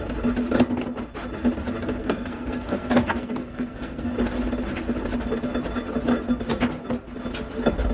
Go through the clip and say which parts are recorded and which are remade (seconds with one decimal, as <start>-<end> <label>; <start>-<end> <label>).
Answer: 0.0-2.0 recorded; 2.0-4.1 remade; 4.1-7.9 recorded

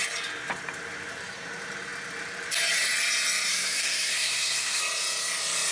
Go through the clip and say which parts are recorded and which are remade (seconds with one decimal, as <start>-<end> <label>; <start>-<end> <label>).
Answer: 0.0-3.5 recorded; 3.5-4.8 remade; 4.8-5.7 recorded

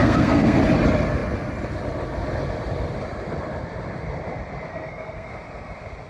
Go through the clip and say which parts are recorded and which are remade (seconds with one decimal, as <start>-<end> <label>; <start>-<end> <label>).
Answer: 0.0-0.6 remade; 0.6-4.7 recorded; 4.7-5.3 remade; 5.3-6.1 recorded